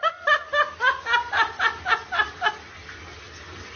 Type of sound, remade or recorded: recorded